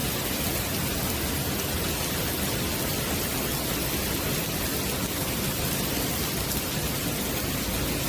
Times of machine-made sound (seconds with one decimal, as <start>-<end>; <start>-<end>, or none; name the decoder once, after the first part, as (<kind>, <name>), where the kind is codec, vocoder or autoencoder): none